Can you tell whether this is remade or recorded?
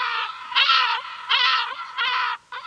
remade